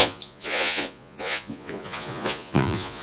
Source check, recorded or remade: remade